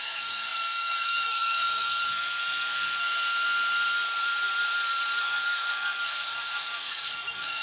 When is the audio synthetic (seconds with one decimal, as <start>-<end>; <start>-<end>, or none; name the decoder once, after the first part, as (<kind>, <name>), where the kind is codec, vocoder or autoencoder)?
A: 0.0-3.1 (codec, SNAC); 5.2-7.6